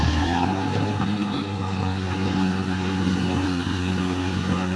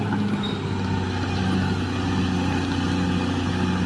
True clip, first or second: second